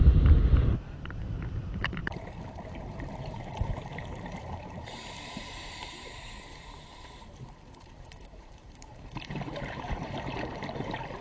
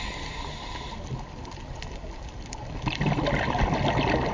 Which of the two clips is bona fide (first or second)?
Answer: second